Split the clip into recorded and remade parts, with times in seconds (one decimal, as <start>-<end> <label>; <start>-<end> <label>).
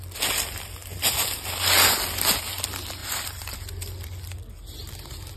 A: 0.0-3.0 recorded; 3.0-4.9 remade; 4.9-5.4 recorded